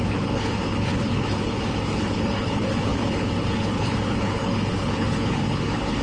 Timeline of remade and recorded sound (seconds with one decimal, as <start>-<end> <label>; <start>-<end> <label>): 0.0-6.0 remade